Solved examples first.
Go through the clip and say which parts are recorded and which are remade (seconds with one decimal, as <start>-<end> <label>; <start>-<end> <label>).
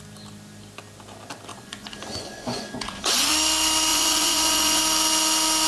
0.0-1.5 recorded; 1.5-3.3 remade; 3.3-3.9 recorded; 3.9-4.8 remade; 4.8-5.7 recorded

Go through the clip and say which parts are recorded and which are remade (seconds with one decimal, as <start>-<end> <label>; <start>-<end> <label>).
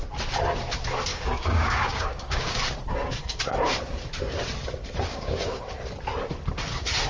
0.0-1.1 recorded; 1.1-2.6 remade; 2.6-5.1 recorded; 5.1-5.6 remade; 5.6-7.1 recorded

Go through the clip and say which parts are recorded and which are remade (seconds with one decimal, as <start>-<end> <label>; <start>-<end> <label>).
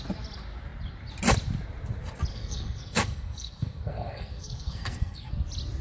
0.0-2.3 recorded; 2.3-5.3 remade; 5.3-5.8 recorded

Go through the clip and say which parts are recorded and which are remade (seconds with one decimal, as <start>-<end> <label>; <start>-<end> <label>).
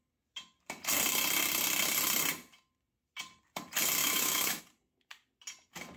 0.0-4.0 recorded; 4.0-4.6 remade; 4.6-6.0 recorded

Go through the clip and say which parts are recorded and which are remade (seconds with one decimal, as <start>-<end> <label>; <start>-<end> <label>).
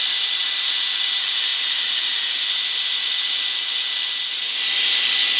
0.0-5.4 recorded